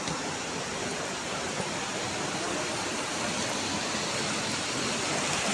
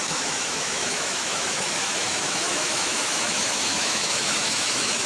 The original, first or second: first